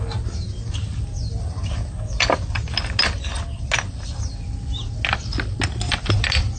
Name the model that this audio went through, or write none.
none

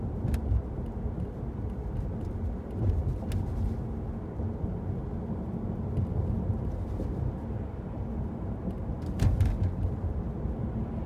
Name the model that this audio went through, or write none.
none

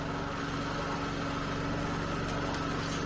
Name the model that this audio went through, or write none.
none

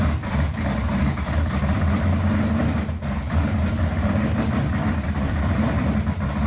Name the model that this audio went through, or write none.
vocoder, BigVGAN v2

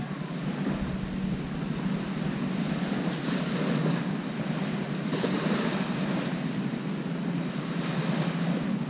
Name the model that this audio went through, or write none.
none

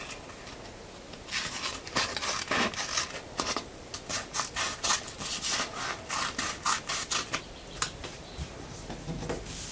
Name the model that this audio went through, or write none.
none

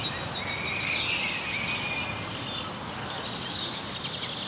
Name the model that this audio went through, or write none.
none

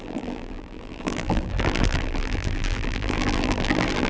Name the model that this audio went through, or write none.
vocoder, BigVGAN v2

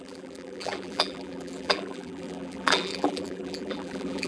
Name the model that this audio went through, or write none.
vocoder, BigVGAN v2